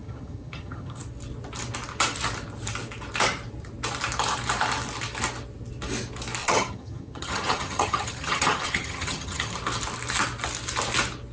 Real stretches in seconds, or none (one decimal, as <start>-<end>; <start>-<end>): 1.0-6.4; 9.5-11.3